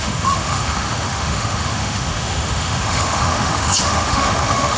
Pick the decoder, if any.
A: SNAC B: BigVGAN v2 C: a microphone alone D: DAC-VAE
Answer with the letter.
D